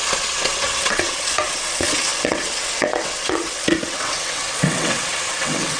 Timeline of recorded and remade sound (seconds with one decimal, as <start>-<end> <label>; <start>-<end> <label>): 0.0-5.8 remade

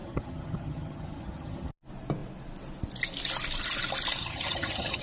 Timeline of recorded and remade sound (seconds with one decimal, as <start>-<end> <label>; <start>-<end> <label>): 0.0-1.7 remade; 1.7-4.2 recorded; 4.2-5.0 remade